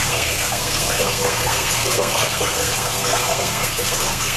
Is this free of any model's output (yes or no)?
no